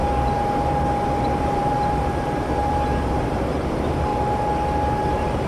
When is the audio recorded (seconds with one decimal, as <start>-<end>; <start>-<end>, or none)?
0.0-1.4; 4.1-5.0